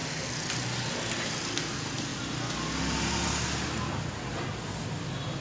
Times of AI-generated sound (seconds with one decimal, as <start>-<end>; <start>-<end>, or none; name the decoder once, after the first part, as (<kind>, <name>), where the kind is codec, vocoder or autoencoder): none